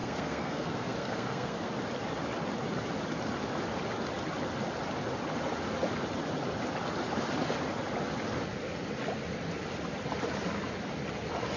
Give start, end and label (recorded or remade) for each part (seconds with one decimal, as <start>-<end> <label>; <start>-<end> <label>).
0.0-1.7 remade; 1.7-11.6 recorded

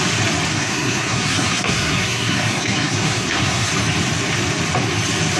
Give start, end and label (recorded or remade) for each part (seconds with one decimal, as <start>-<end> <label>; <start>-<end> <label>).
0.0-0.5 recorded; 0.5-3.7 remade; 3.7-5.4 recorded

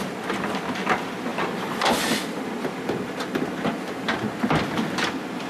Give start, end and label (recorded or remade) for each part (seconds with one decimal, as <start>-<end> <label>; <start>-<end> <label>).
0.0-5.5 recorded

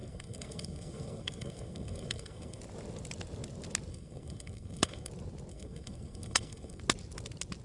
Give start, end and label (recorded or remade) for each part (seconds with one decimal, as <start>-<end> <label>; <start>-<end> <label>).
0.0-2.6 remade; 2.6-3.9 recorded; 3.9-5.1 remade; 5.1-5.5 recorded; 5.5-6.8 remade; 6.8-7.6 recorded